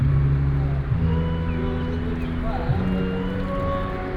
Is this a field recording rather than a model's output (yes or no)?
yes